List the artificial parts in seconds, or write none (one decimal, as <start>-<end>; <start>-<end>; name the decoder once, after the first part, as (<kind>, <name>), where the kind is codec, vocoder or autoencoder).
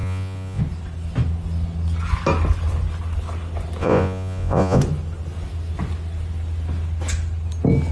0.0-0.6 (vocoder, Vocos); 3.8-4.8